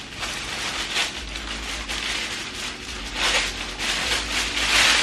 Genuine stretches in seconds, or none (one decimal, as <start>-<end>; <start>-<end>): 0.0-5.0